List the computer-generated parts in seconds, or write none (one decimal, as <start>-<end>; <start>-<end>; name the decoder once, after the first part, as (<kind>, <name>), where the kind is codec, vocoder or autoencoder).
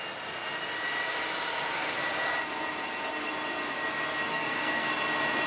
4.3-4.9 (codec, SNAC)